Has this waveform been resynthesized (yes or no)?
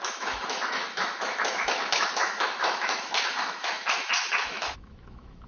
yes